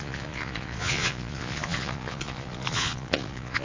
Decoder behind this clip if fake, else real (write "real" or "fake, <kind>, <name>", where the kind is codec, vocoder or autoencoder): fake, vocoder, Vocos